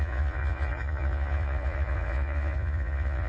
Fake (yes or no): yes